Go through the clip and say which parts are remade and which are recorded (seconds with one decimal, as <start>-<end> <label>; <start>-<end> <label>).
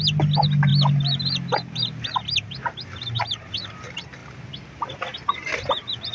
0.0-6.1 recorded